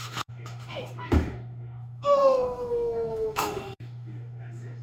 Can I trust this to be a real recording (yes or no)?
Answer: no